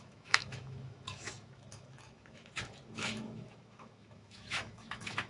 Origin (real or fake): fake